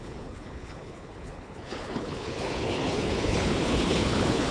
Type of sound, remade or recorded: remade